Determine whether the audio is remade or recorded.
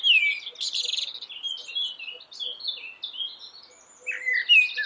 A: recorded